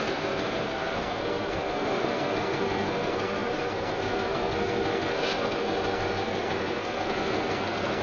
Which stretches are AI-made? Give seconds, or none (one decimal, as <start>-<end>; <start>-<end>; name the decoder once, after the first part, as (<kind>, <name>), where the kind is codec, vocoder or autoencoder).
0.0-8.0 (codec, SNAC)

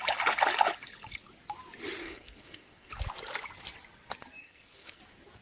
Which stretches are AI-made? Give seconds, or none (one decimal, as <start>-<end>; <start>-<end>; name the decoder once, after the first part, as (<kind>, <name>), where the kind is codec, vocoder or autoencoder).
2.0-2.9 (codec, SNAC); 4.4-5.0

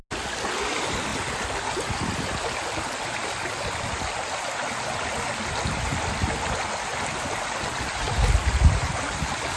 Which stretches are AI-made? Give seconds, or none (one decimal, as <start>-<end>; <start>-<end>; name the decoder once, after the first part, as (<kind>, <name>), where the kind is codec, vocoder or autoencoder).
none

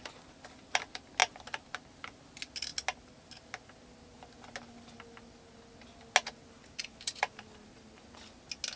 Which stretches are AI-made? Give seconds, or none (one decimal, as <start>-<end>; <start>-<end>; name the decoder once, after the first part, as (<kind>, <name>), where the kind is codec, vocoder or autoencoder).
none

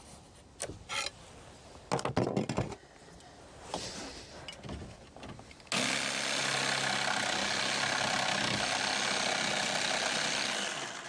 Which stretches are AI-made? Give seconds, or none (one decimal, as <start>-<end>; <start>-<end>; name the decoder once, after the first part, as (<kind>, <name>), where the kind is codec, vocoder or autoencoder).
none

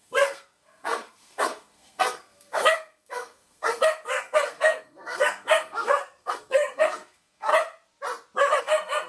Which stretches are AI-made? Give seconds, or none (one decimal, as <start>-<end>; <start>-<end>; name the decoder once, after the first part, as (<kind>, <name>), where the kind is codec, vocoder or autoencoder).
0.0-7.5 (codec, SNAC); 8.6-9.1

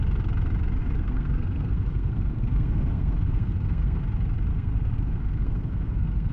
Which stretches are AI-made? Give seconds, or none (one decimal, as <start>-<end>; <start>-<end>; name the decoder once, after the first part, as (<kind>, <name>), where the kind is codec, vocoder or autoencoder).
0.8-4.0 (codec, SNAC); 4.5-6.3